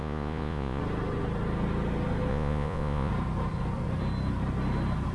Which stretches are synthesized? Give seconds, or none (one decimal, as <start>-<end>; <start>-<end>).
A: 0.0-0.8; 2.3-3.1